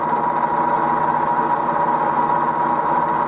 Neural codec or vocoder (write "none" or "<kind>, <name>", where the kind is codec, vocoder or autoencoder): none